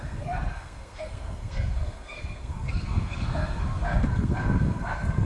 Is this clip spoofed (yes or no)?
yes